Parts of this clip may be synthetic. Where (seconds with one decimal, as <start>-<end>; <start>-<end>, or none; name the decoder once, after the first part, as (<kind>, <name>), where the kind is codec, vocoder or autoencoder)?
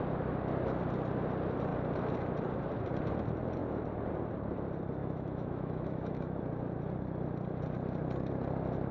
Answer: 5.0-6.4 (autoencoder, DAC-VAE)